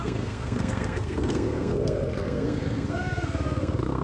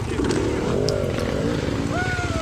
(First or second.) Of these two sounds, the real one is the second